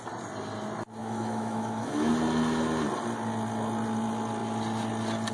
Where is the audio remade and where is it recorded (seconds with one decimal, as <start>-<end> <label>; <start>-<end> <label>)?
0.0-1.0 recorded; 1.0-2.1 remade; 2.1-5.3 recorded

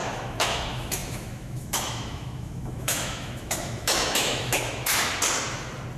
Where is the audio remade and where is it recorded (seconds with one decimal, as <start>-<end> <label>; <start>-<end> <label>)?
0.0-5.1 remade; 5.1-6.0 recorded

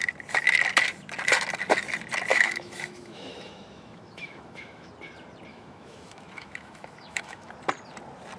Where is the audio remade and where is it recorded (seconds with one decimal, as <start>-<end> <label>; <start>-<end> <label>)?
0.0-2.3 recorded; 2.3-4.9 remade; 4.9-5.5 recorded; 5.5-7.5 remade; 7.5-8.4 recorded

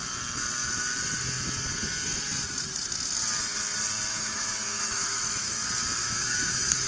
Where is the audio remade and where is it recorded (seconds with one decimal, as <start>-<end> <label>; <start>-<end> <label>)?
0.0-4.1 recorded; 4.1-5.6 remade; 5.6-6.0 recorded; 6.0-6.9 remade

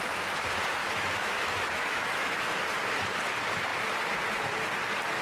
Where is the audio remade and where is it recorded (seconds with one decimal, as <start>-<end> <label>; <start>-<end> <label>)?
0.0-0.8 recorded; 0.8-2.6 remade; 2.6-5.2 recorded

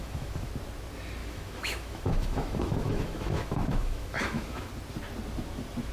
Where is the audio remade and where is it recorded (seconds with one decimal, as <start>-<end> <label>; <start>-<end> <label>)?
0.0-0.5 remade; 0.5-1.2 recorded; 1.2-4.7 remade; 4.7-5.9 recorded

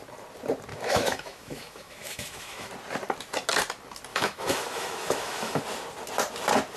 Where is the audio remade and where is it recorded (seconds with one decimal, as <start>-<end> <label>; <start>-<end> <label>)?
0.0-0.7 recorded; 0.7-2.7 remade; 2.7-4.1 recorded; 4.1-5.6 remade; 5.6-6.8 recorded